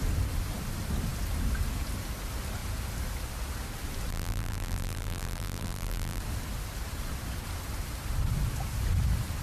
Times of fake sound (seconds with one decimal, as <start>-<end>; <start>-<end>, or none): 4.1-6.2